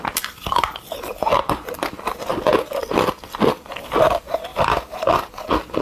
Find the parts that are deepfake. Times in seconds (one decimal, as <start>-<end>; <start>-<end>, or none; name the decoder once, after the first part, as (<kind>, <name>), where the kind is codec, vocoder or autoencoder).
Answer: 1.3-1.8 (vocoder, BigVGAN v2); 4.5-5.3